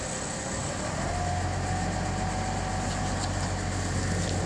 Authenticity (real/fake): real